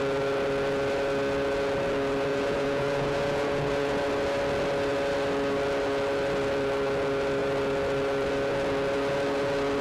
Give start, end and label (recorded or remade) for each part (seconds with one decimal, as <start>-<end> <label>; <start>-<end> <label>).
0.0-2.3 recorded; 2.3-4.0 remade; 4.0-9.8 recorded